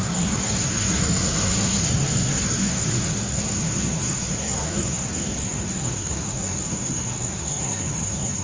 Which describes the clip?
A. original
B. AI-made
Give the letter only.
B